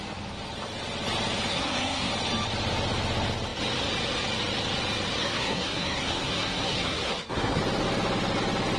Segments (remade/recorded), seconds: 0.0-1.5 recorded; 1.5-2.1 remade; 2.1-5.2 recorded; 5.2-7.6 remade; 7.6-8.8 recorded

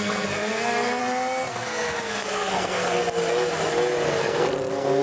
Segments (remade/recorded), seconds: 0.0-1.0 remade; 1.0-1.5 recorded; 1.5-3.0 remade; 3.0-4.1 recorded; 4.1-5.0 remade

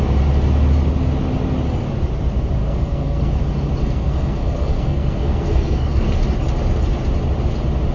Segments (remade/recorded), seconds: 0.0-2.6 recorded; 2.6-3.4 remade; 3.4-3.8 recorded; 3.8-6.1 remade; 6.1-7.9 recorded

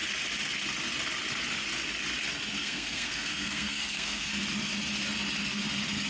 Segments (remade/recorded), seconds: 0.0-2.5 recorded; 2.5-4.3 remade; 4.3-6.1 recorded